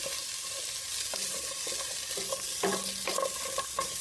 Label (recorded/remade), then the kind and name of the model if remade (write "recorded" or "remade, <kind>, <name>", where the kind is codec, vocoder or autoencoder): recorded